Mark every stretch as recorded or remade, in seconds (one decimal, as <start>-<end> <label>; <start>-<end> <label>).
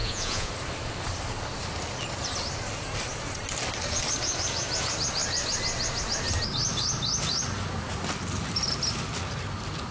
0.0-0.5 remade; 0.5-9.9 recorded